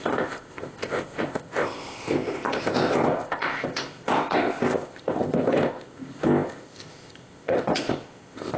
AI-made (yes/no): yes